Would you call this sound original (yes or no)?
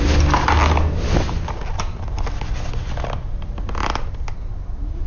yes